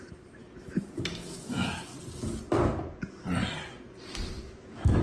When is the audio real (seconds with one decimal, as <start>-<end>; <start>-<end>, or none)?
1.9-4.4